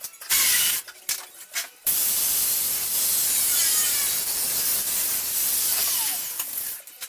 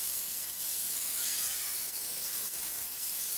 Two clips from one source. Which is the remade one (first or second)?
second